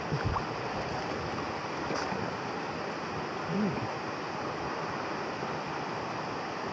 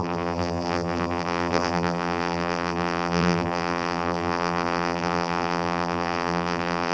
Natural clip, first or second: first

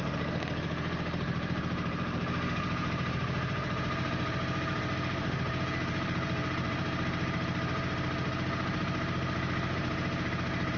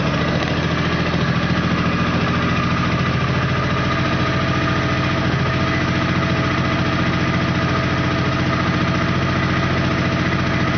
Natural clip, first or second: second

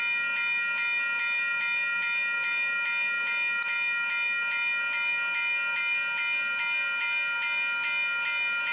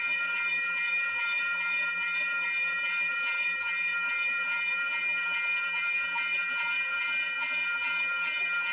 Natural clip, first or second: first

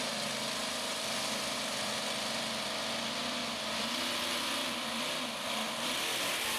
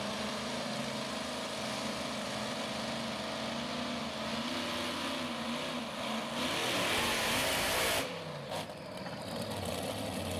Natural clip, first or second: second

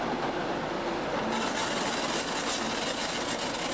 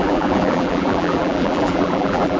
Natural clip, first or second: first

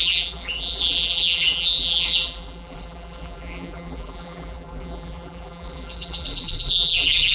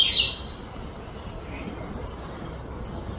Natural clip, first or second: second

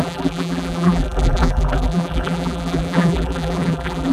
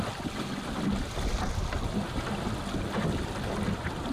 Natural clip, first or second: second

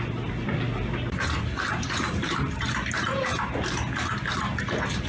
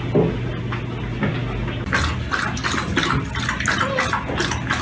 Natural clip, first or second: second